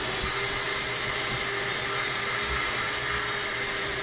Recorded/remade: recorded